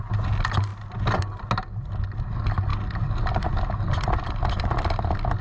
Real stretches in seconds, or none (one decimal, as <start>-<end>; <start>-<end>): 0.0-5.4

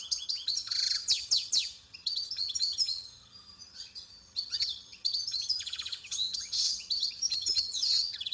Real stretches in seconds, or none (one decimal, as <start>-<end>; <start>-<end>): none

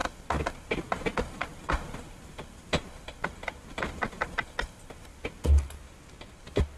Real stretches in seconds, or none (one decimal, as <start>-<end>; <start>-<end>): 0.0-6.8

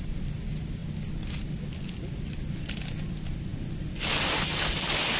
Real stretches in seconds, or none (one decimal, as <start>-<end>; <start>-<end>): 0.0-5.2

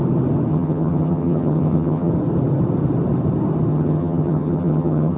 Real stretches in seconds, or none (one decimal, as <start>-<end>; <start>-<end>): 0.0-0.5; 2.1-3.7

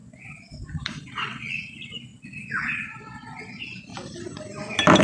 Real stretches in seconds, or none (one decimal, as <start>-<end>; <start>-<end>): 3.9-5.0